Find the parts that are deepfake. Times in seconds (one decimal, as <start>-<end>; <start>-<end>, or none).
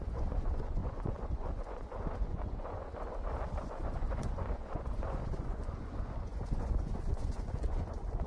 0.0-2.9; 3.6-8.3